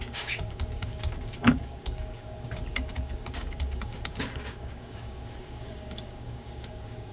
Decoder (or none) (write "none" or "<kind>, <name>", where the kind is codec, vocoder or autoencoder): codec, DAC